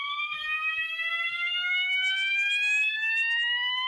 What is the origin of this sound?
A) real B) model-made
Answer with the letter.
B